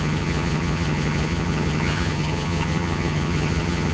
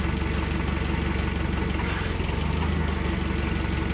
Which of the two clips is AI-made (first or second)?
first